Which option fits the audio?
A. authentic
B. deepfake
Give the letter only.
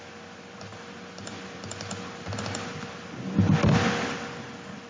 A